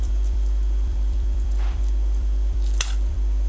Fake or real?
fake